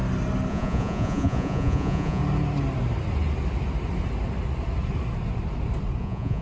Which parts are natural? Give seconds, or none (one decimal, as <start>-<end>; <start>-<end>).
0.0-0.5; 2.2-6.0